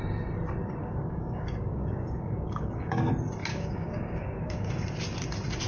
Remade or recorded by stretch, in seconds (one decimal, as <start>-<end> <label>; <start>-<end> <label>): 0.0-0.8 recorded; 0.8-3.1 remade; 3.1-3.5 recorded; 3.5-4.7 remade; 4.7-5.7 recorded